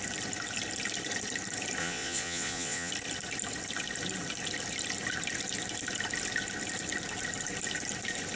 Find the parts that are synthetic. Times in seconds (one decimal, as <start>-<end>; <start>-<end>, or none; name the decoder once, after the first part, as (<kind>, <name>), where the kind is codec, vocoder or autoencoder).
1.8-2.9 (vocoder, Vocos)